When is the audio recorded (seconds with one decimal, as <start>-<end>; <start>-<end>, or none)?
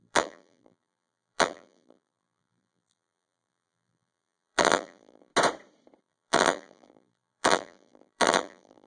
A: 5.3-6.0